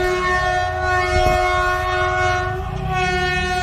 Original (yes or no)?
yes